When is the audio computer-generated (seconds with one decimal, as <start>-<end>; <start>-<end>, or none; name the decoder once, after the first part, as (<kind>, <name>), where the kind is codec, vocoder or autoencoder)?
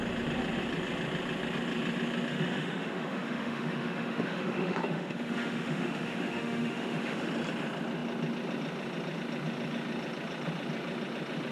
2.3-7.3 (autoencoder, DAC-VAE)